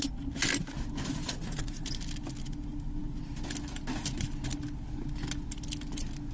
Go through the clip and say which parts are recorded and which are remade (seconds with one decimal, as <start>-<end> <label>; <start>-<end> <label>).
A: 0.0-1.2 recorded; 1.2-1.9 remade; 1.9-6.3 recorded